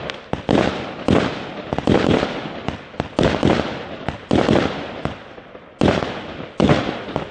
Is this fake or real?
fake